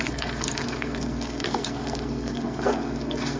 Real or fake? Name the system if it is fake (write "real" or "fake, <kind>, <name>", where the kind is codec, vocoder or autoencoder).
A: fake, codec, SNAC